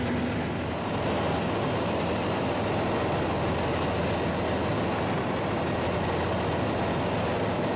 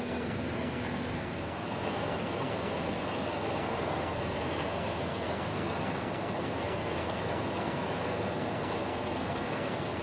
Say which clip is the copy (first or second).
second